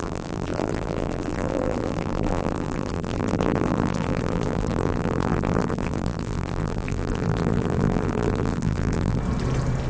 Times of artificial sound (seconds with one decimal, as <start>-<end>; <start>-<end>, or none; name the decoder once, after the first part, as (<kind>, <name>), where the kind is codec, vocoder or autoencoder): 0.0-9.2 (vocoder, BigVGAN v2)